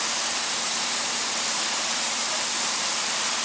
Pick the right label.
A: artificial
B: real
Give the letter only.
A